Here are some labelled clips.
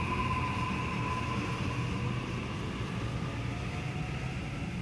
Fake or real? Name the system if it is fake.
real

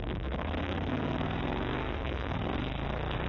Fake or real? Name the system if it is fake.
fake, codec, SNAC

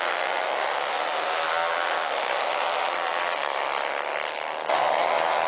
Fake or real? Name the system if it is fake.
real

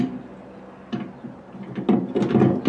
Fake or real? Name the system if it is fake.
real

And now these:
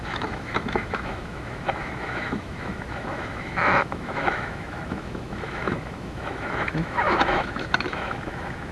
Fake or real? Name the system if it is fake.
fake, autoencoder, DAC-VAE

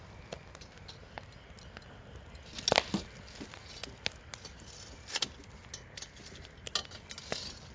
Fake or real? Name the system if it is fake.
real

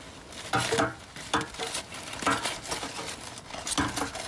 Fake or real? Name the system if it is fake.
real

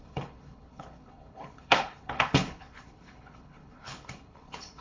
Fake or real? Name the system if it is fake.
fake, codec, HILCodec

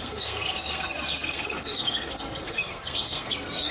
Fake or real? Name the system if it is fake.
fake, codec, SNAC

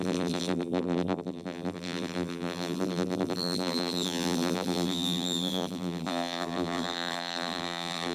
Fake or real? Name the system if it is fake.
fake, vocoder, BigVGAN v2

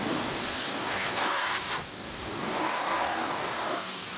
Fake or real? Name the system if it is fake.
fake, codec, DAC